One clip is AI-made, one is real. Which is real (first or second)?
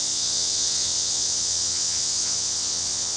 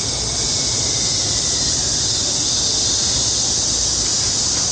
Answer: second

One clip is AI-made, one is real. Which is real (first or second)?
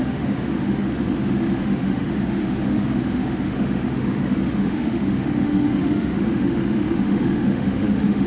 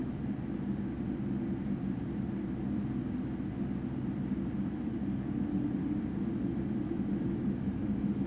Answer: second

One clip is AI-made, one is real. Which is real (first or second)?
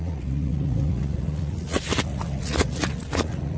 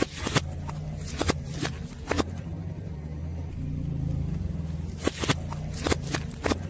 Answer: second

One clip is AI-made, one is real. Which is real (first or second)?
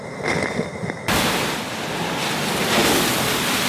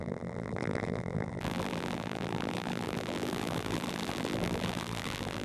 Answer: first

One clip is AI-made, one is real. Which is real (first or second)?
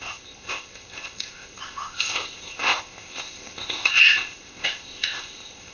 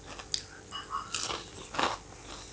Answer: second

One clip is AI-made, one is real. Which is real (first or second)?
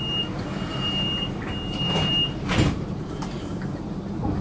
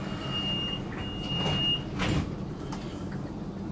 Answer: second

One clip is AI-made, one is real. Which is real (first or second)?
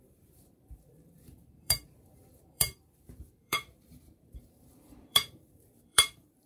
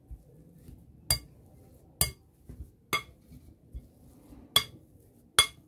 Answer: second